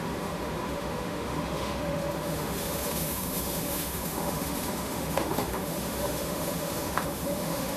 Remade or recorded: remade